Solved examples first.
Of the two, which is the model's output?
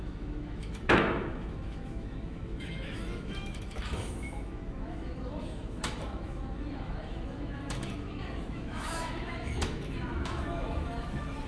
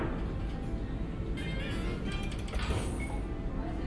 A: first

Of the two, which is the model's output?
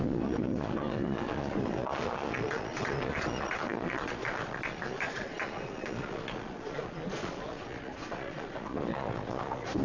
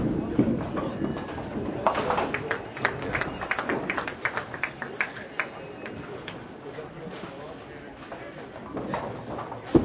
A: first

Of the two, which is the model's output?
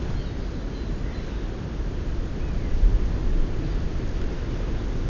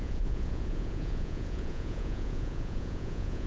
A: second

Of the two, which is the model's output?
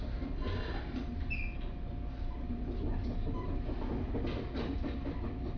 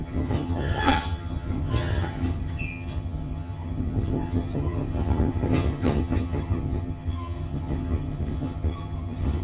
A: second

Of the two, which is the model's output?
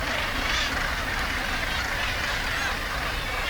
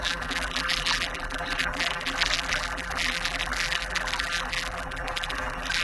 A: second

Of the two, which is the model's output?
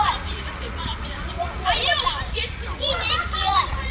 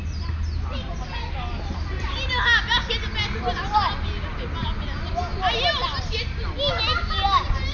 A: first